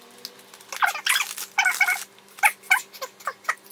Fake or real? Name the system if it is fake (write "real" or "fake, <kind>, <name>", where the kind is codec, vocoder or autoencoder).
real